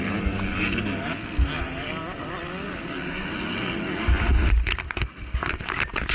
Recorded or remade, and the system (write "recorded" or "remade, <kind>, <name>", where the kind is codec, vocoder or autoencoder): recorded